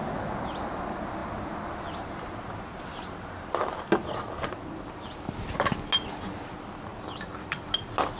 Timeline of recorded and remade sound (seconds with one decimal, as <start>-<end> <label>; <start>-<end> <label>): 0.0-6.9 recorded; 6.9-7.6 remade; 7.6-8.2 recorded